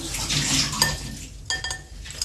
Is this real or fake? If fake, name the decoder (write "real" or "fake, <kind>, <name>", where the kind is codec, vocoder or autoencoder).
real